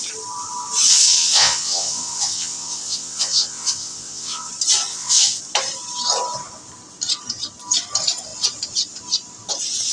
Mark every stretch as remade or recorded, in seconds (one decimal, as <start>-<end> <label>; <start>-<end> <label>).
0.0-0.9 recorded; 0.9-4.5 remade; 4.5-4.9 recorded; 4.9-5.4 remade; 5.4-9.9 recorded